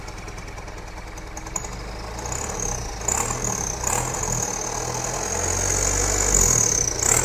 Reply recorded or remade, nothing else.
recorded